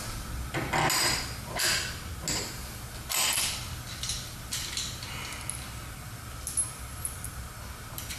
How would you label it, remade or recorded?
recorded